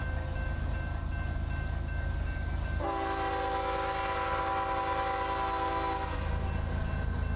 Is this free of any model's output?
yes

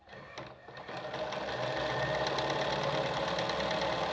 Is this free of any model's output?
yes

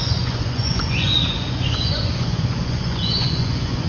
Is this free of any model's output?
no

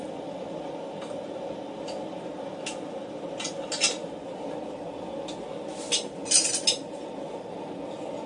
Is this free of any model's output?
yes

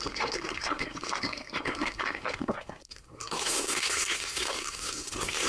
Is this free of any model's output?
no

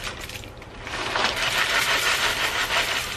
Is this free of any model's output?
no